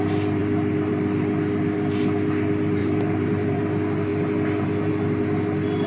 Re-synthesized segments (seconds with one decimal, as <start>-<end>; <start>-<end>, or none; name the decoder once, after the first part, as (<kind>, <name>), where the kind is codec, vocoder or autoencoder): 2.8-3.6 (vocoder, BigVGAN v2)